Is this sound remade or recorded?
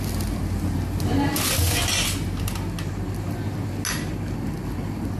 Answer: recorded